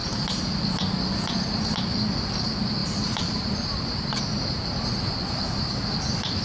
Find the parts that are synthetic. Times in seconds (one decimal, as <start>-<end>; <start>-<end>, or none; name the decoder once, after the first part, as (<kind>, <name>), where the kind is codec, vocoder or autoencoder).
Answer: 2.8-6.4 (vocoder, BigVGAN v2)